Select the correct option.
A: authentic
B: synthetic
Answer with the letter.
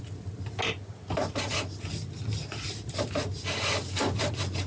A